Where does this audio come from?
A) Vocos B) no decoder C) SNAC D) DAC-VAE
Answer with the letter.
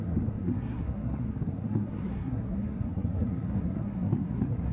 C